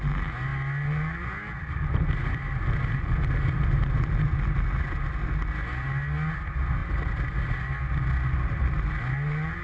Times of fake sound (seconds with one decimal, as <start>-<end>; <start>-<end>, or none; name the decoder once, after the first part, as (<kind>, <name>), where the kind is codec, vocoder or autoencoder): none

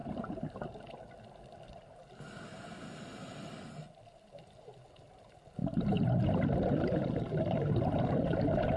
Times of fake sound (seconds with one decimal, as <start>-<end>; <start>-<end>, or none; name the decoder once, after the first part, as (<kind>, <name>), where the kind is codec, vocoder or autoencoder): 5.6-8.4 (vocoder, BigVGAN v2)

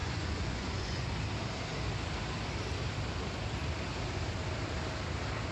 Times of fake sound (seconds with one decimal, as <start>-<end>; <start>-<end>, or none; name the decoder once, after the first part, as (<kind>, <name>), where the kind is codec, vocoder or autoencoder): 0.0-1.1 (vocoder, Vocos)

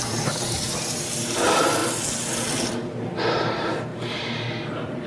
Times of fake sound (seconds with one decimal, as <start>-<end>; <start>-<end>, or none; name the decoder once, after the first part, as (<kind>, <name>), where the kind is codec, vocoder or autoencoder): 0.0-1.8 (vocoder, BigVGAN v2); 2.7-5.1

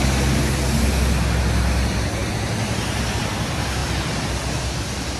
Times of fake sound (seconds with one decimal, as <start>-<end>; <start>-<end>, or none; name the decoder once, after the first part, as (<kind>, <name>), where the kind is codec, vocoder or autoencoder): none

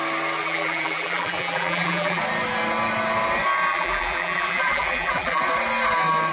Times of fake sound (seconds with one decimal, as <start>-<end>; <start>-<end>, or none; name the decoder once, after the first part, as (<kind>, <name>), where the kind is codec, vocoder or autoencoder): 0.4-2.2 (vocoder, BigVGAN v2); 3.7-5.4

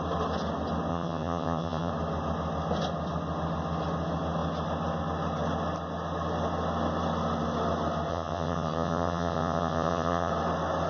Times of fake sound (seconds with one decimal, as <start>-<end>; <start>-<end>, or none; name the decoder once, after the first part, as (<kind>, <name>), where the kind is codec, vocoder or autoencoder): 0.9-1.9 (vocoder, HiFi-GAN); 8.1-10.3

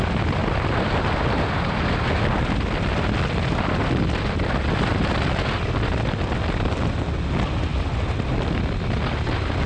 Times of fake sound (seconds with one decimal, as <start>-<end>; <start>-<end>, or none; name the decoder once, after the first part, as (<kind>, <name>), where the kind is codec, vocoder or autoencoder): none